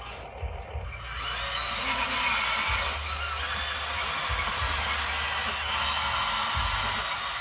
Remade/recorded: recorded